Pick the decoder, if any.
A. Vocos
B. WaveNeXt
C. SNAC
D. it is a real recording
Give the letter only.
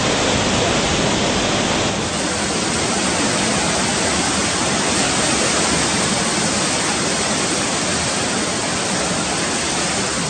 D